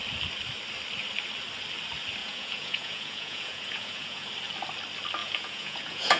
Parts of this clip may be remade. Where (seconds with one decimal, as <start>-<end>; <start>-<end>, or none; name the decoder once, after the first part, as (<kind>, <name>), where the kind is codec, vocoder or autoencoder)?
2.2-4.3 (vocoder, Vocos); 5.2-6.2